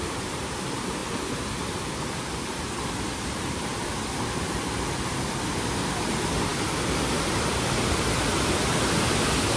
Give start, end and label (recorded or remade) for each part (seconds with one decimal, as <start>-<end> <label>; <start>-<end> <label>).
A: 0.0-9.6 recorded